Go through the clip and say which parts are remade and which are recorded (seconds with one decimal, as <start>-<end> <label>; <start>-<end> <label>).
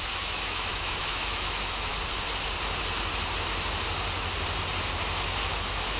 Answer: 0.0-1.9 remade; 1.9-5.5 recorded; 5.5-6.0 remade